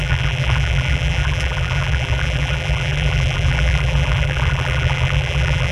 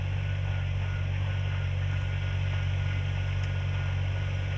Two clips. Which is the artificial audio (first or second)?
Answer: first